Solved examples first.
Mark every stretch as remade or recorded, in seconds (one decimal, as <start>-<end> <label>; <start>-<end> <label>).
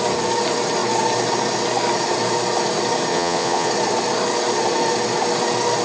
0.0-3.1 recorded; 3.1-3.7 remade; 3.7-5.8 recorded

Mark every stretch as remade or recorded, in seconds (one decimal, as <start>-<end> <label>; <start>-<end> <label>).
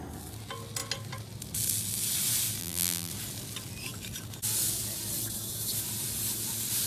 0.0-2.6 recorded; 2.6-3.1 remade; 3.1-6.9 recorded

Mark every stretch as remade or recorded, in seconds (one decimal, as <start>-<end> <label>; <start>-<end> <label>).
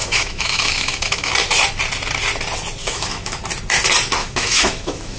0.0-1.3 remade; 1.3-2.8 recorded; 2.8-3.4 remade; 3.4-4.2 recorded; 4.2-5.2 remade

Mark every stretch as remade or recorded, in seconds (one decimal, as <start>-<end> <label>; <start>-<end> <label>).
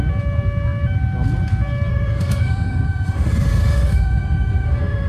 0.0-1.9 recorded; 1.9-5.1 remade